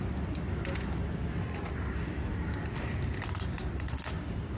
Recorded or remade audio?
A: recorded